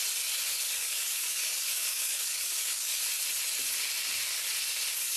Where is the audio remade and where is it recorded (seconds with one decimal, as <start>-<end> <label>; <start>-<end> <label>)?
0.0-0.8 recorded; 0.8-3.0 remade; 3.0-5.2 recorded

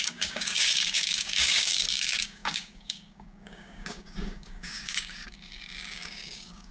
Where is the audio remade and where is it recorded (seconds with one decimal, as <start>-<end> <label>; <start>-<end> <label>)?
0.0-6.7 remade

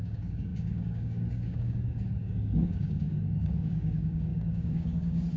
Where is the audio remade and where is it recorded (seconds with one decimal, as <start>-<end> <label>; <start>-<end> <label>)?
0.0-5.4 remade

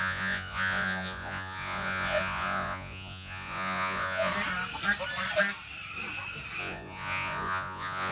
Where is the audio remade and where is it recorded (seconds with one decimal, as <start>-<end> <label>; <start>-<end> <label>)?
0.0-4.3 remade; 4.3-6.6 recorded; 6.6-8.1 remade

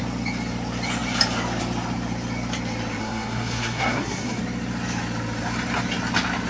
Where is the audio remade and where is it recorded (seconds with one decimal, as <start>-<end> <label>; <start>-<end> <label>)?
0.0-3.0 recorded; 3.0-4.4 remade; 4.4-6.5 recorded

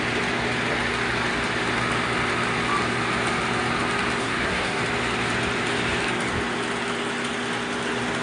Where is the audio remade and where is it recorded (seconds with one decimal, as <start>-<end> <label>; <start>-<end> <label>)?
0.0-4.2 recorded; 4.2-4.8 remade; 4.8-8.2 recorded

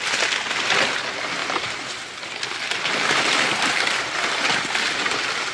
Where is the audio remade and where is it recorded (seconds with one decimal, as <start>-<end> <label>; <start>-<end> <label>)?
0.0-5.5 recorded